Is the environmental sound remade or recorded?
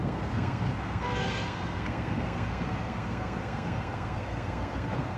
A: remade